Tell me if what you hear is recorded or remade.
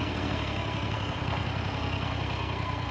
remade